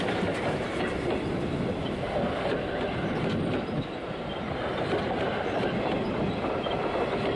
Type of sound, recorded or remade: recorded